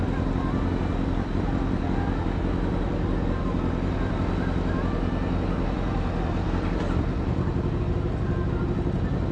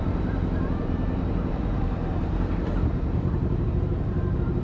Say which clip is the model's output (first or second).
second